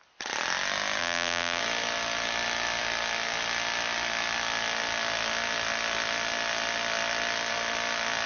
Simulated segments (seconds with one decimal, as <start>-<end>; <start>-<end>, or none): 1.0-1.6